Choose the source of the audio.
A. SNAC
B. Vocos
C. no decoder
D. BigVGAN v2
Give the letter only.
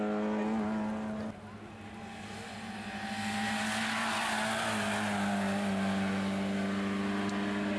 C